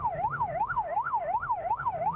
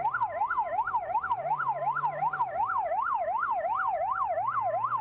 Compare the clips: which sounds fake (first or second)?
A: first